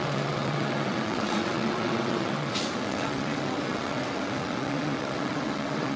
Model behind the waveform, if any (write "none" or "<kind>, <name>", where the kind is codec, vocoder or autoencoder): vocoder, WaveNeXt